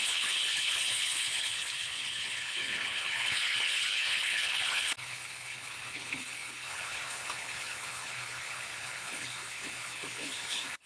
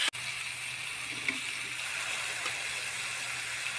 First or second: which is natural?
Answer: second